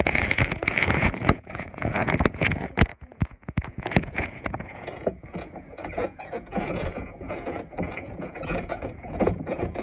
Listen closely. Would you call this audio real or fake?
fake